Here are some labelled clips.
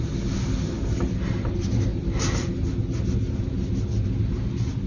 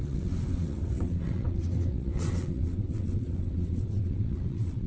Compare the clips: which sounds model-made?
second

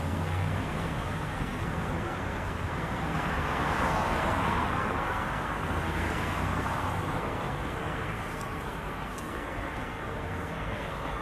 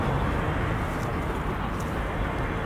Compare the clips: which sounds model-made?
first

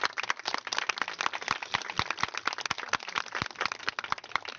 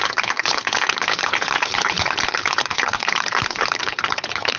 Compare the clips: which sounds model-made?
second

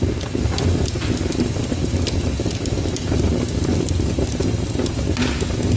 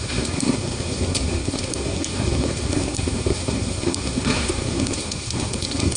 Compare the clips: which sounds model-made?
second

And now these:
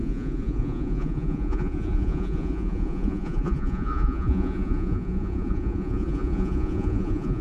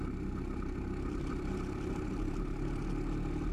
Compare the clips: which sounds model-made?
first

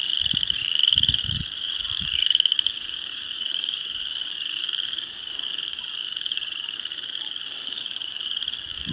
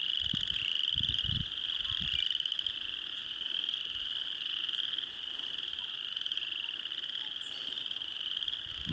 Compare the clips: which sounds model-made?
first